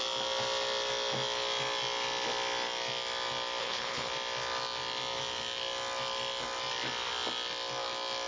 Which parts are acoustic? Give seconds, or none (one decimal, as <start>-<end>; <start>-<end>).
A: 0.0-3.6; 4.1-8.3